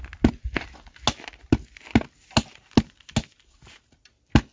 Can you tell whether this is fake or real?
real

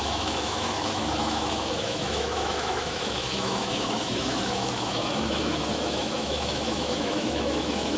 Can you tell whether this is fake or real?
fake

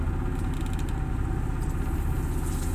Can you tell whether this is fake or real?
real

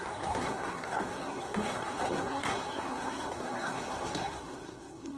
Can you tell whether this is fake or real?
fake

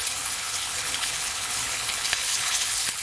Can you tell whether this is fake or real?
fake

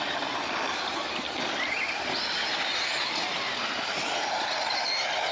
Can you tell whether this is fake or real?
real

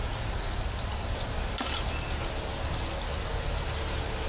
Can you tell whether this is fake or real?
real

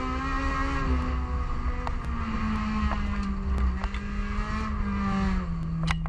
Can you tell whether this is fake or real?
real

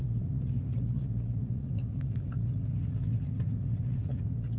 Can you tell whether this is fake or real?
fake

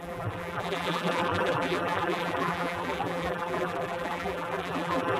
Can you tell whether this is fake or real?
fake